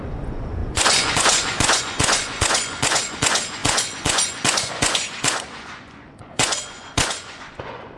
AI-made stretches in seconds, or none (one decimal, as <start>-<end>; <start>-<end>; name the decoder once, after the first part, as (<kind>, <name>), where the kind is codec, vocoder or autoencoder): 0.0-8.0 (vocoder, Vocos)